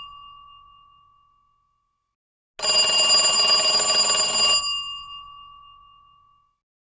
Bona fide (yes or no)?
yes